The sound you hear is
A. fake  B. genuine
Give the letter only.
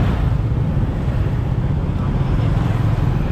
B